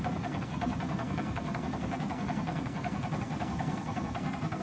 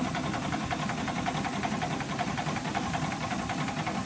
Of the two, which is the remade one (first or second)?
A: first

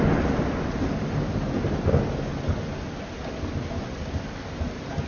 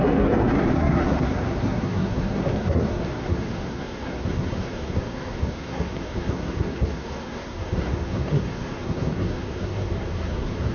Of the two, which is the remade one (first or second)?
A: second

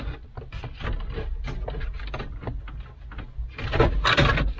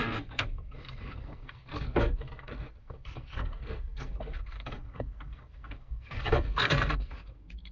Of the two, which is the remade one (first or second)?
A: second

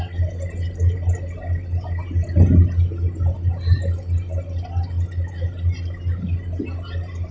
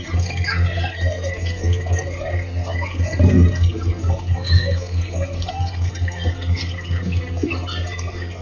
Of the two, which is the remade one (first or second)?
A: second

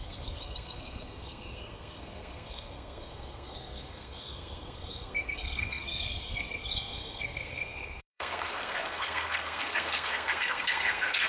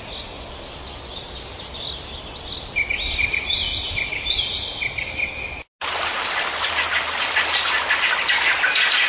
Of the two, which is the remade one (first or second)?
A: first